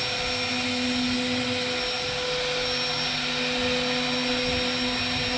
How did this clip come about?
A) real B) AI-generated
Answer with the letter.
A